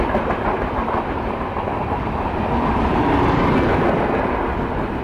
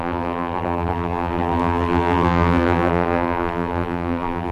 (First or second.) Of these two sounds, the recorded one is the first